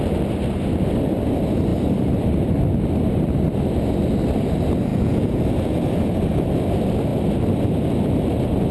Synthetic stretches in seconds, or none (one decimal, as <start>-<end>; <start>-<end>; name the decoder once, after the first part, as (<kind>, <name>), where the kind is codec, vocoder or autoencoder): 4.9-5.4 (vocoder, Vocos)